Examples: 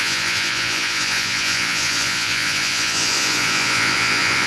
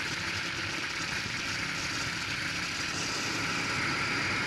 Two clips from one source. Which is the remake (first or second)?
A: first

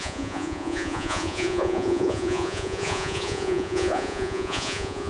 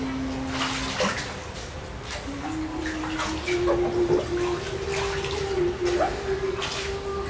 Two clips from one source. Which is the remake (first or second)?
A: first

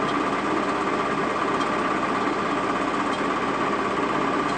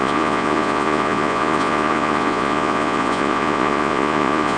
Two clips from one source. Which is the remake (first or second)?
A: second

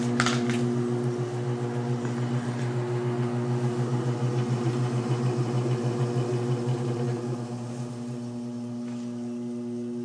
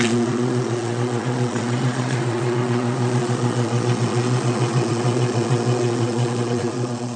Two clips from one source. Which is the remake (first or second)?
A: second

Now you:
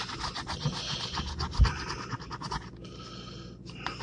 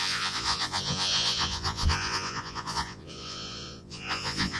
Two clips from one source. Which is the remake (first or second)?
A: second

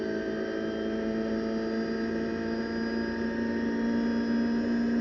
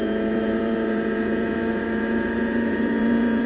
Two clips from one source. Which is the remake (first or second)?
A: second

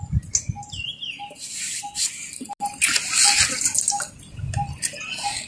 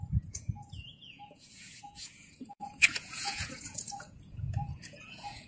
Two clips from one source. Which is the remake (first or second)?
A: second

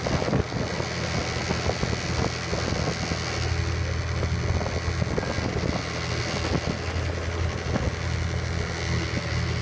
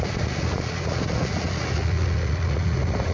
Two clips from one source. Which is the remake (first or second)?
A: second